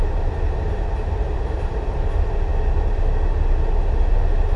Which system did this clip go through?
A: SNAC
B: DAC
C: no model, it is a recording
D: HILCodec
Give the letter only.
C